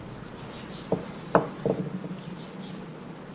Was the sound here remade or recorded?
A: recorded